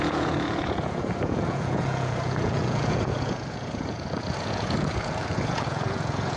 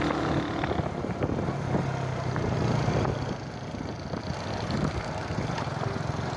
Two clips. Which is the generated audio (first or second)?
first